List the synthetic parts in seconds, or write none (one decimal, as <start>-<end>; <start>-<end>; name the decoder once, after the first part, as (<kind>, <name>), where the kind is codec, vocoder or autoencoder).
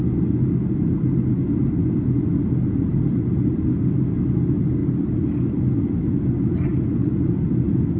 none